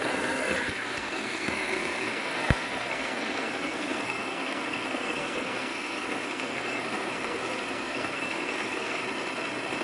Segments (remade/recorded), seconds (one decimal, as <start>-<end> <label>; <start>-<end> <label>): 0.0-9.0 remade; 9.0-9.8 recorded